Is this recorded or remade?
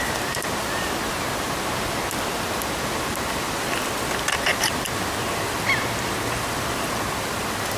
recorded